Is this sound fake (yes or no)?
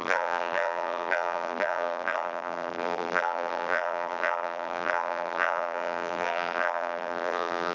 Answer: yes